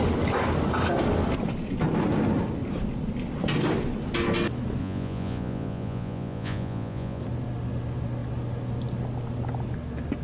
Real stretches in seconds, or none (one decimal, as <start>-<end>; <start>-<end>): 0.0-4.8; 7.2-10.2